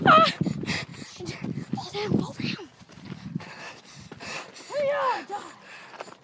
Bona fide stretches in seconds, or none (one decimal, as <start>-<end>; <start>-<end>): 0.0-6.2

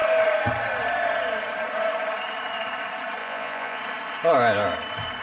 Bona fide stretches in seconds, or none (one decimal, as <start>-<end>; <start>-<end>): 0.0-3.2; 3.8-5.2

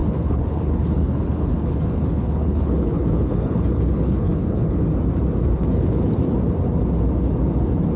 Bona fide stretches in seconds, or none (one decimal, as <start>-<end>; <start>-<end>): 4.8-5.6; 6.1-8.0

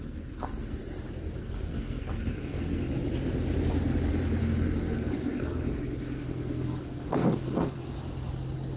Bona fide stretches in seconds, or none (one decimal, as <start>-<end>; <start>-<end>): 0.8-1.4; 2.9-4.4; 7.8-8.8

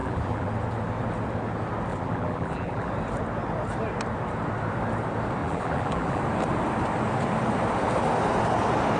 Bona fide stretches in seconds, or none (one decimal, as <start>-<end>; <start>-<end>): 0.5-1.9; 2.9-5.4; 6.2-9.0

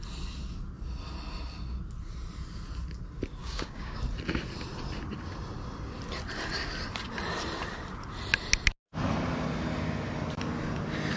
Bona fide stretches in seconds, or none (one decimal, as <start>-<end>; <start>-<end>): 0.0-3.4; 4.0-11.2

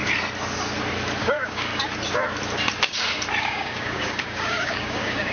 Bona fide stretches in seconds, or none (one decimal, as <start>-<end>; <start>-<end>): 0.0-1.2; 1.7-3.4